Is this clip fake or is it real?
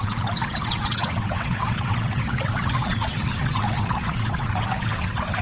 fake